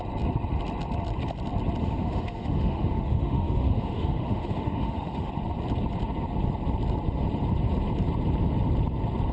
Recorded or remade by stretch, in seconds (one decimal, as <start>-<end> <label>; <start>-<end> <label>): 0.0-1.8 recorded; 1.8-5.3 remade; 5.3-9.3 recorded